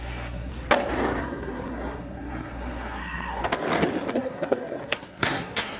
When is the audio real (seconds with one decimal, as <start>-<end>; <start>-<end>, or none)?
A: 0.5-1.2; 3.4-4.1